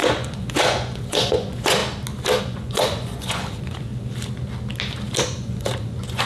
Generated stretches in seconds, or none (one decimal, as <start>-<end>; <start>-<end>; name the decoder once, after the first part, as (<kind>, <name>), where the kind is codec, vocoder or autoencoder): 0.0-1.8 (vocoder, Vocos); 2.4-3.9; 5.2-6.3